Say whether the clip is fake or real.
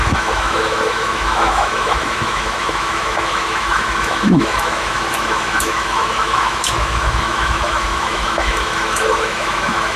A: fake